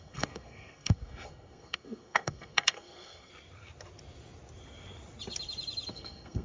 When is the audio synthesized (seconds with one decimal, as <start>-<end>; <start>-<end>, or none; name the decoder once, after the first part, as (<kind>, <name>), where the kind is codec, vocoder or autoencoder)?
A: 0.0-3.3 (codec, SNAC); 5.9-6.4